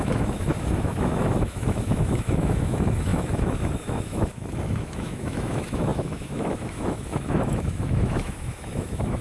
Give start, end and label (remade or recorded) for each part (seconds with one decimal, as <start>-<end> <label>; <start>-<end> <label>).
0.0-9.2 remade